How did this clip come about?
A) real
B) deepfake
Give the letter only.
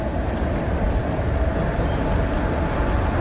A